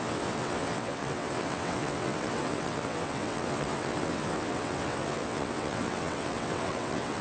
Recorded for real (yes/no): no